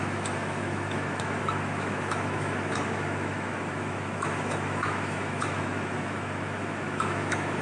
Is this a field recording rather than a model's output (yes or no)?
no